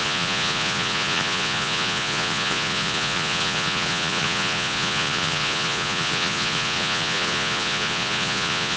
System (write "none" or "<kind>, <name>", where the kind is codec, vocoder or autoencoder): vocoder, Vocos